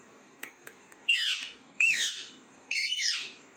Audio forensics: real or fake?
fake